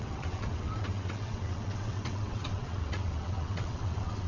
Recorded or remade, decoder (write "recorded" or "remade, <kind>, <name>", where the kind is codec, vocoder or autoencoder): remade, vocoder, WaveNeXt